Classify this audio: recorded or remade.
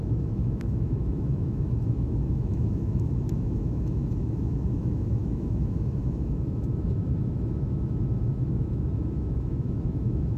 remade